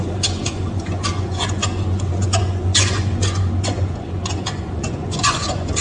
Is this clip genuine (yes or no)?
no